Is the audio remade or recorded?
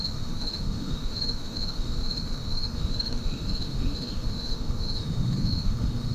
remade